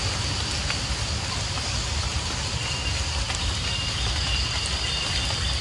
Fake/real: real